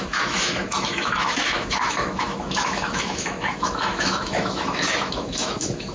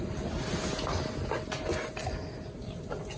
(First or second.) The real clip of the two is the second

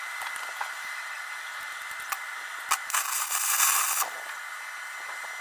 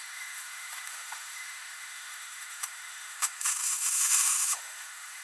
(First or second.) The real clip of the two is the first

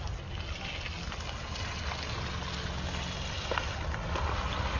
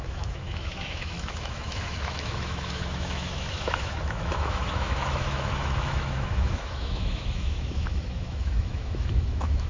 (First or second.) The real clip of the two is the first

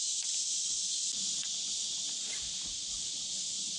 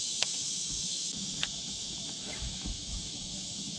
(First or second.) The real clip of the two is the first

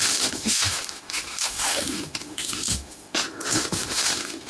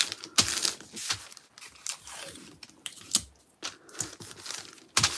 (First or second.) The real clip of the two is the second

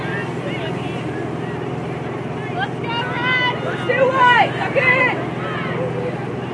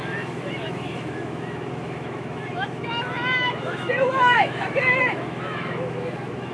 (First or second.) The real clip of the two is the first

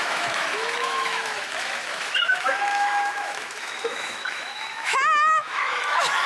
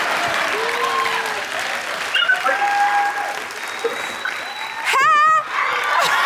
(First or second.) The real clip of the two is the second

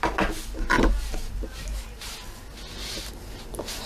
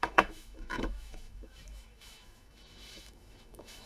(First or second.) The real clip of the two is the first